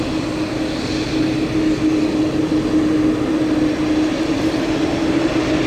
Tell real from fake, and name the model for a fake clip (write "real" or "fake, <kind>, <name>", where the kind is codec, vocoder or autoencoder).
real